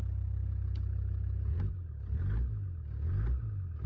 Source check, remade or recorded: recorded